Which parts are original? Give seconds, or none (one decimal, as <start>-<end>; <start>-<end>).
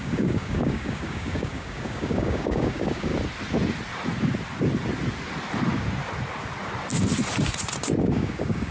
3.1-8.0